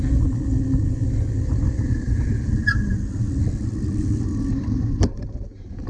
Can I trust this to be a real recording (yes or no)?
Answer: yes